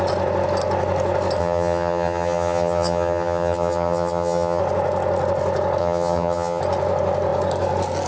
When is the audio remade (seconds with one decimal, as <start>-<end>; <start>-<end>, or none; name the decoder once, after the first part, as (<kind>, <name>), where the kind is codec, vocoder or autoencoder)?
1.4-4.6 (vocoder, HiFi-GAN); 5.8-6.6